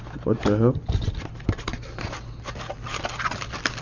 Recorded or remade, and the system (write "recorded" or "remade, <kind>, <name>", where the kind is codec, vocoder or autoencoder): recorded